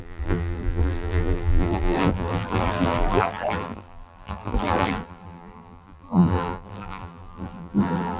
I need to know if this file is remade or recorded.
remade